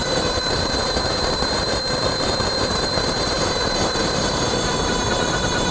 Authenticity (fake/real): fake